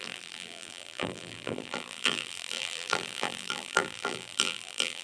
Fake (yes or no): yes